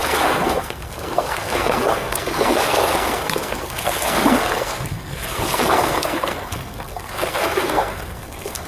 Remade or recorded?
remade